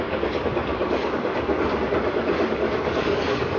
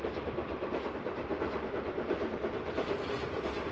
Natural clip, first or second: second